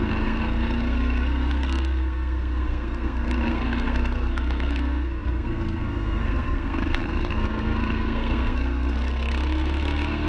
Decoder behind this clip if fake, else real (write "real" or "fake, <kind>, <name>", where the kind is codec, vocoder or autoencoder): fake, codec, SNAC